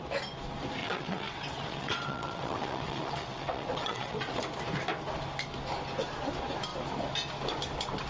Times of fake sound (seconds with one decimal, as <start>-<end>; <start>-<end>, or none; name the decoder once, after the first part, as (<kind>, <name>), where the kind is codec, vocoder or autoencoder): 0.8-4.4 (vocoder, WaveNeXt)